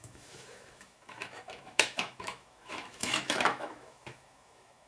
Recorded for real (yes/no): no